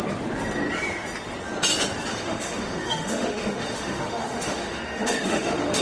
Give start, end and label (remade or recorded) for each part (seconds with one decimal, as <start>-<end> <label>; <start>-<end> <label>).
0.0-2.1 recorded; 2.1-5.8 remade

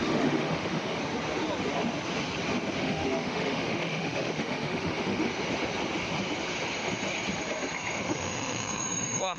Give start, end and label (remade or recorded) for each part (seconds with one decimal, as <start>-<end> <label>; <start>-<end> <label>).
0.0-1.0 remade; 1.0-2.8 recorded; 2.8-5.3 remade; 5.3-8.0 recorded; 8.0-9.4 remade

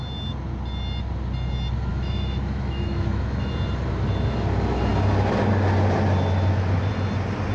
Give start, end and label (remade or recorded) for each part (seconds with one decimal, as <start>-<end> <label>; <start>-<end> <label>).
0.0-1.9 recorded; 1.9-3.5 remade; 3.5-7.5 recorded

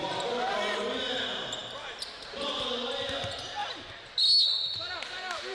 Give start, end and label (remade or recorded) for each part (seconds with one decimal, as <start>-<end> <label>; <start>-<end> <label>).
0.0-5.5 recorded

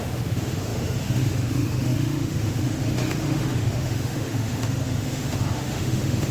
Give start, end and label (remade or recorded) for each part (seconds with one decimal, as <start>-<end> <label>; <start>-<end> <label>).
0.0-6.3 remade

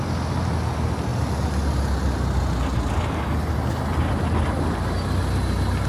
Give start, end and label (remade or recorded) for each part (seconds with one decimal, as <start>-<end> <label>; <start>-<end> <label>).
0.0-5.9 recorded

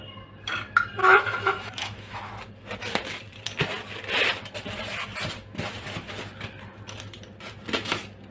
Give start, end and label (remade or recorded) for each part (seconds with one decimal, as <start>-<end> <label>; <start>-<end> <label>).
0.0-1.0 recorded; 1.0-2.3 remade; 2.3-8.3 recorded

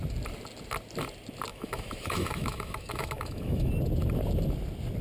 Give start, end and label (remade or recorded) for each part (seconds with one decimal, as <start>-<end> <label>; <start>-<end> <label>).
0.0-1.5 recorded; 1.5-3.7 remade; 3.7-5.0 recorded